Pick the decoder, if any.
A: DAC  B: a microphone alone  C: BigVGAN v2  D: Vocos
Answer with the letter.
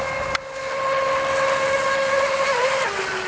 B